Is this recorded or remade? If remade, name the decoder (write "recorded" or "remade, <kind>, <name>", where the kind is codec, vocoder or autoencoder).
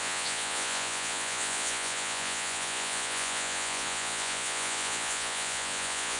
remade, vocoder, Vocos